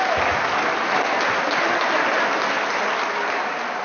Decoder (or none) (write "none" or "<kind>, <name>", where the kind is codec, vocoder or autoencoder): none